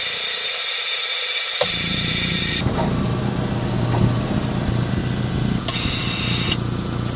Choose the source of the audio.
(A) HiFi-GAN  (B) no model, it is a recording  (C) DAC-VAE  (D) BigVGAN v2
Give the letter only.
B